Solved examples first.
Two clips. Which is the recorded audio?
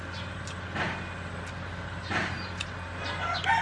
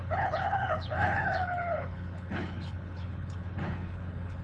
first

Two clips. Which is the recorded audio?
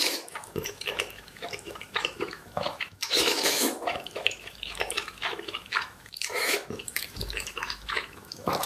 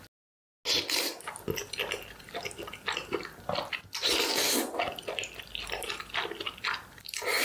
second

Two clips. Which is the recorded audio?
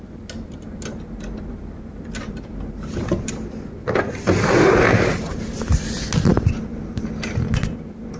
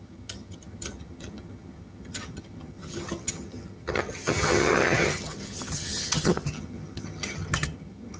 first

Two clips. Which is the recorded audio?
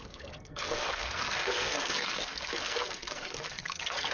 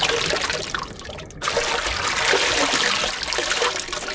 second